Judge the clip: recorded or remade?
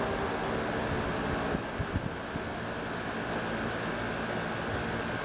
recorded